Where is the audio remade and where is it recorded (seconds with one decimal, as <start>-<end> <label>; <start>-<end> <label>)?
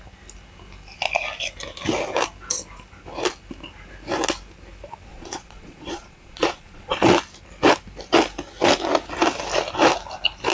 0.0-5.1 recorded; 5.1-7.0 remade; 7.0-10.5 recorded